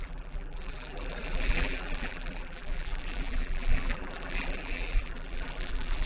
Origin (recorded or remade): remade